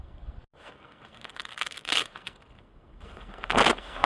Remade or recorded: remade